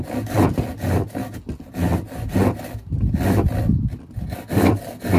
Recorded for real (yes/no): yes